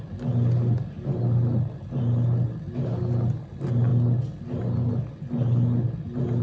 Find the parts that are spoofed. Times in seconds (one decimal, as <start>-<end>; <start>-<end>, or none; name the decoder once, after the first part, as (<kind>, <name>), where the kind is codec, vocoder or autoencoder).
none